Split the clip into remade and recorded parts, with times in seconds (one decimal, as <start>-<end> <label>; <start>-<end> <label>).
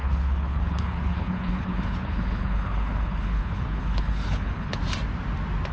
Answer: 0.0-4.8 remade; 4.8-5.7 recorded